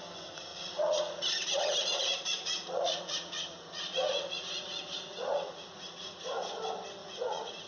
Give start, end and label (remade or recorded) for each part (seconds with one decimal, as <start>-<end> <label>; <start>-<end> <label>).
0.0-0.5 recorded; 0.5-1.3 remade; 1.3-1.8 recorded; 1.8-6.4 remade; 6.4-7.0 recorded; 7.0-7.7 remade